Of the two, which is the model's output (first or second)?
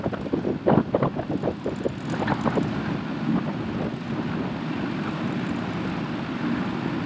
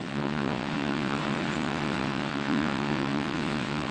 second